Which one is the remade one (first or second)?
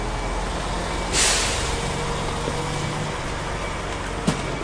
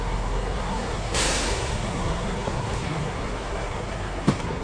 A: second